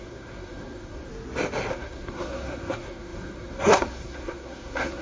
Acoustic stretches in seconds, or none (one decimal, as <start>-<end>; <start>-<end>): 1.1-1.7